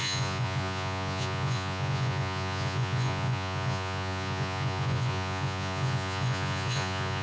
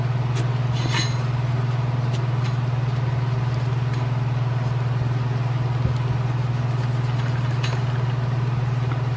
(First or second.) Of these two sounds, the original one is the second